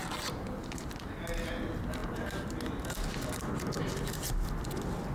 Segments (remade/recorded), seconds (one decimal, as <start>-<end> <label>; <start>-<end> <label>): 0.0-5.1 recorded

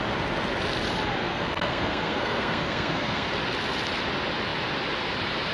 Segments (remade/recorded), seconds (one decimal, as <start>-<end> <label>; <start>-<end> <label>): 0.0-1.2 recorded; 1.2-3.3 remade; 3.3-5.5 recorded